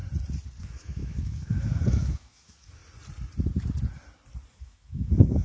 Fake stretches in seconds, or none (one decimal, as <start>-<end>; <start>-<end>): 0.6-2.8; 4.5-5.4